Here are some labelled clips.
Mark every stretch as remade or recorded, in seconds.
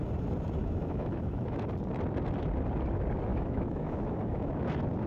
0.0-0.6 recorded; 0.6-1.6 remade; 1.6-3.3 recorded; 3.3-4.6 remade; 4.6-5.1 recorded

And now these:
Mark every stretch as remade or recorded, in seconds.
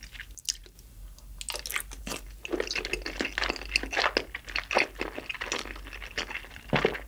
0.0-7.1 recorded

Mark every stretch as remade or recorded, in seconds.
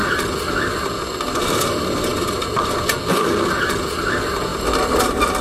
0.0-5.4 recorded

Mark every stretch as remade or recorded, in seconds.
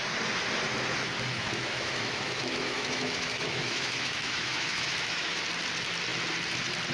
0.0-1.3 recorded; 1.3-5.4 remade; 5.4-6.9 recorded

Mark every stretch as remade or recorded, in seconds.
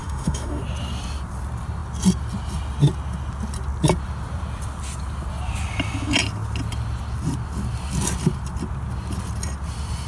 0.0-0.6 remade; 0.6-10.1 recorded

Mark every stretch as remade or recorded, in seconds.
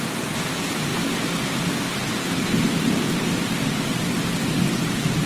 0.0-5.3 recorded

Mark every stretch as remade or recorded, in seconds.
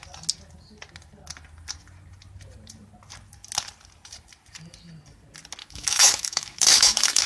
0.0-5.6 recorded; 5.6-7.3 remade